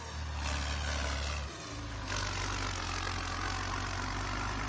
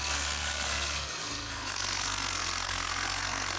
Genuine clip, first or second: first